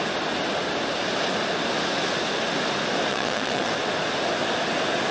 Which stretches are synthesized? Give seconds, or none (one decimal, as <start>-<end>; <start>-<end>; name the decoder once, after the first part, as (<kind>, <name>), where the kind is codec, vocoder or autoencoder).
3.1-3.7 (vocoder, WaveNeXt)